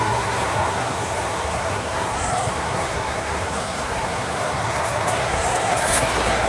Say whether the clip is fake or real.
fake